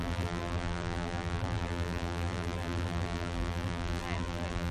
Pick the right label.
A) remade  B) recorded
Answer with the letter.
A